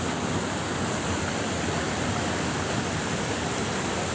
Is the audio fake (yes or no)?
no